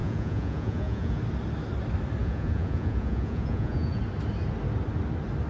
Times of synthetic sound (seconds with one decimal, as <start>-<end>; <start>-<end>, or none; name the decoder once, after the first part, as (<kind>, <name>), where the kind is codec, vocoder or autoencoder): 0.0-1.2 (vocoder, Vocos); 2.2-4.0

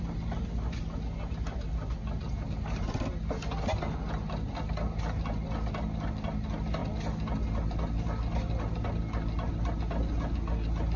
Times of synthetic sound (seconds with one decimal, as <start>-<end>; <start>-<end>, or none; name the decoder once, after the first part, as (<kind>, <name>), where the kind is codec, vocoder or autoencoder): none